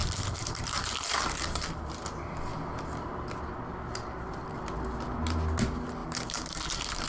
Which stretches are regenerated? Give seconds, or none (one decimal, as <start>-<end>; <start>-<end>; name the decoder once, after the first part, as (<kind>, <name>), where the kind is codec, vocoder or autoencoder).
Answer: 0.0-1.9 (vocoder, BigVGAN v2); 6.0-7.1